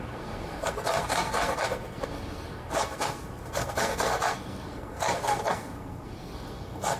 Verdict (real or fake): fake